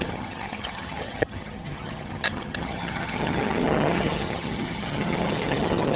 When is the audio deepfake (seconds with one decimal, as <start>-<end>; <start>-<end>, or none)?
0.0-6.0